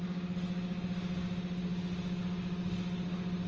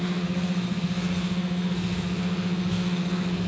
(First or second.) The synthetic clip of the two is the second